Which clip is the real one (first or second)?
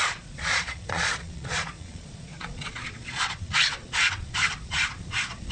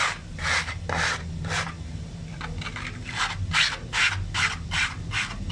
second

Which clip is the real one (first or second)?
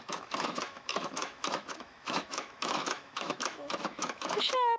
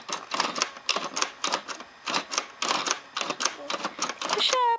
second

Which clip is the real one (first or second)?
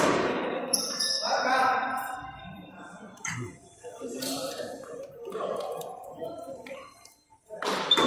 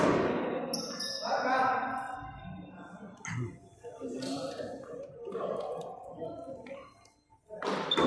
second